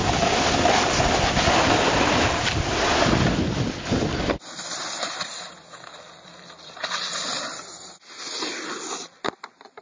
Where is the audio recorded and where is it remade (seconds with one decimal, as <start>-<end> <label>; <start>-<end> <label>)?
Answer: 0.0-9.8 recorded